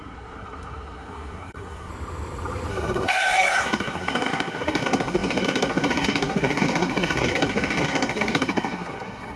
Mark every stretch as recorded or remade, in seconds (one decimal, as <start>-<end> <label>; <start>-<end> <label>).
0.0-1.9 remade; 1.9-2.7 recorded; 2.7-9.4 remade